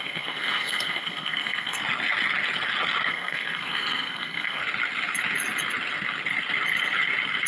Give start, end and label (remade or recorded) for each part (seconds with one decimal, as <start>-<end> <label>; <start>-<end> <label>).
0.0-1.8 remade; 1.8-3.1 recorded; 3.1-4.6 remade; 4.6-7.5 recorded